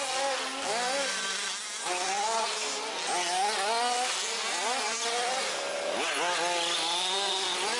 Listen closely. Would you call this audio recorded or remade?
recorded